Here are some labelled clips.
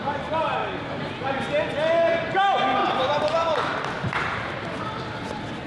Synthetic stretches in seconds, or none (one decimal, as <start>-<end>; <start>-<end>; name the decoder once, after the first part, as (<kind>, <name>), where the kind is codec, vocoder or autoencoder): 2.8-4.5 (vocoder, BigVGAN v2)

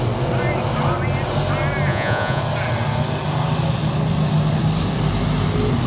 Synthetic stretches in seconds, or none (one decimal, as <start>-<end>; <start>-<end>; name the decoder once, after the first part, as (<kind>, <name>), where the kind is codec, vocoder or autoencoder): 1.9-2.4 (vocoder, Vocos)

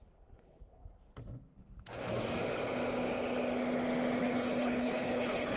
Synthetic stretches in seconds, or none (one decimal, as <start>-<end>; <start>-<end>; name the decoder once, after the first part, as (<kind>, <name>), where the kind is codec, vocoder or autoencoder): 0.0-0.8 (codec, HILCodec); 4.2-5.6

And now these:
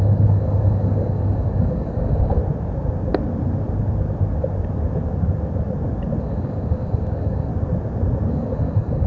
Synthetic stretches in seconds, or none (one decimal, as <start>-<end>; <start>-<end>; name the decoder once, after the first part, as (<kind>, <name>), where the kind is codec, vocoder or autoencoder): 0.0-2.4 (codec, DAC); 6.2-7.5; 8.3-9.1

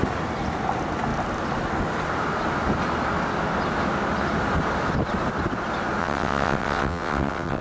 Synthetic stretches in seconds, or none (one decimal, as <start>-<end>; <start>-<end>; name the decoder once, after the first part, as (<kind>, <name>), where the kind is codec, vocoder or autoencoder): 6.0-7.6 (vocoder, WaveNeXt)

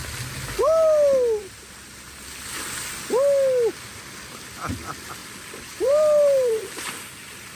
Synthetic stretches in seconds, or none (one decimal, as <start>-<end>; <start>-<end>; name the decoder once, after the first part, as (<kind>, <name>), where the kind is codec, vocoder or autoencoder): 5.2-7.1 (vocoder, BigVGAN v2)

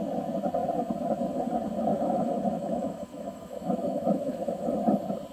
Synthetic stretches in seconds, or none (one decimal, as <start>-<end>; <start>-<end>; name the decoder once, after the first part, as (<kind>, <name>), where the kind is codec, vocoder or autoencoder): 1.9-4.7 (autoencoder, DAC-VAE)